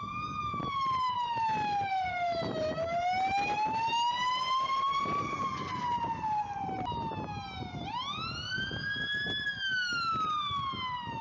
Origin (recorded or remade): recorded